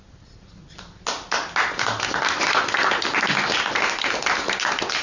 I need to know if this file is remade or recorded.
recorded